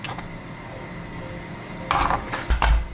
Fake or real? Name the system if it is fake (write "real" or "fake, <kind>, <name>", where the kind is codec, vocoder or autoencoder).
real